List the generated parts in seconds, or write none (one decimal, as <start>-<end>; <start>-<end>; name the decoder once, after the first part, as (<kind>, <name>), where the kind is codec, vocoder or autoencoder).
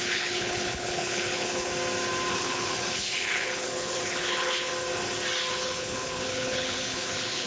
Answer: 0.0-1.7 (codec, HILCodec); 2.3-4.7; 5.5-7.5